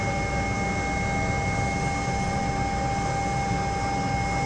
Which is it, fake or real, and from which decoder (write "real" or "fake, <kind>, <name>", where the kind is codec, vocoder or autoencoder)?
real